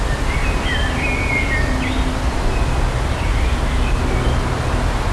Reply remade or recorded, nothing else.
recorded